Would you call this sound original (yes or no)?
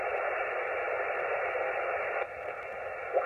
yes